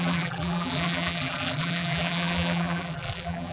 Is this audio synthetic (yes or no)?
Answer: yes